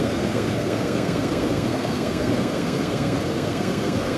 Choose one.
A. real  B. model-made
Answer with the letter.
B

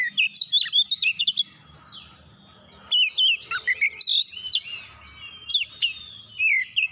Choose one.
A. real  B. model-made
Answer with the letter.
A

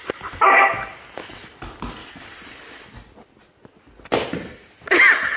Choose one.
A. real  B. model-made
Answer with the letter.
A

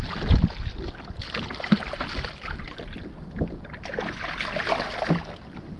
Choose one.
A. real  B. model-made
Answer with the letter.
A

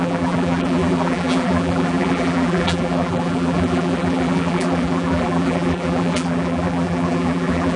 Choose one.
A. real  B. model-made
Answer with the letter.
B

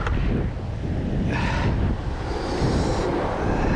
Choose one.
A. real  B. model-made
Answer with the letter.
A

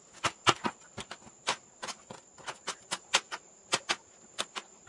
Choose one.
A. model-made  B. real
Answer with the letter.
B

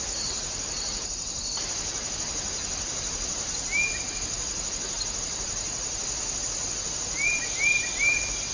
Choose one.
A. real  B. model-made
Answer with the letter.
A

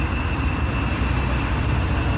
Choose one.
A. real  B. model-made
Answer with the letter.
A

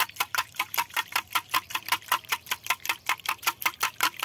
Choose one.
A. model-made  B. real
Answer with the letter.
A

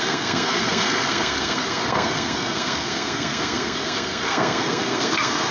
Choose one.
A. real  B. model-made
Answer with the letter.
B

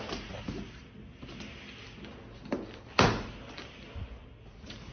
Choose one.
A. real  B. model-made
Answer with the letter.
A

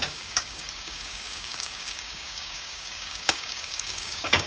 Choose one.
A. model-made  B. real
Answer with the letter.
A